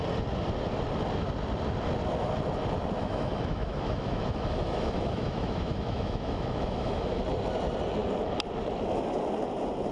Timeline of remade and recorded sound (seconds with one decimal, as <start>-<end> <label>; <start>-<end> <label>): 0.0-3.0 recorded; 3.0-7.2 remade; 7.2-9.9 recorded